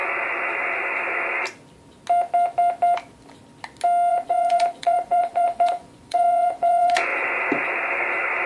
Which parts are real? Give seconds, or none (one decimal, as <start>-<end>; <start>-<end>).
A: 0.0-4.1; 7.1-8.5